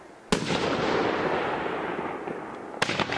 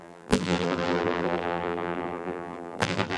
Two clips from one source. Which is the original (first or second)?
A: first